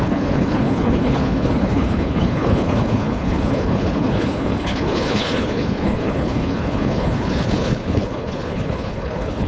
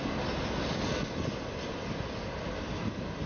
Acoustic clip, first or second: second